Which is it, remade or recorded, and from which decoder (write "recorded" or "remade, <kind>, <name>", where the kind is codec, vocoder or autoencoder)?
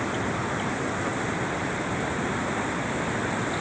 recorded